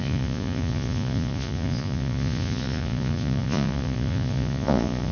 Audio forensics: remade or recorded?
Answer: remade